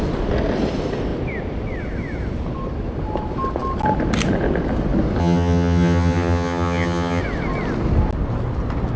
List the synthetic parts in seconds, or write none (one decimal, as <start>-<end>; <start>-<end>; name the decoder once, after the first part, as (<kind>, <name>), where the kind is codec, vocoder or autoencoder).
5.2-7.2 (vocoder, HiFi-GAN)